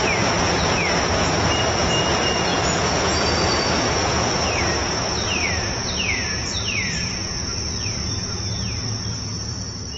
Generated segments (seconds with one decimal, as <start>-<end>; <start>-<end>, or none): 0.0-7.2; 7.8-10.0